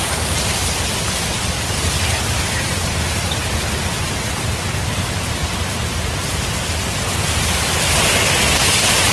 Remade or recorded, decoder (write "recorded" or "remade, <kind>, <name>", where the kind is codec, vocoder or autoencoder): recorded